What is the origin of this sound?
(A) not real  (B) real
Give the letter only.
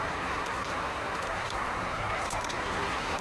A